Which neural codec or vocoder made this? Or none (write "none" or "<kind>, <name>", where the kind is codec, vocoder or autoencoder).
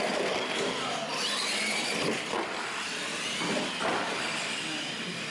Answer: none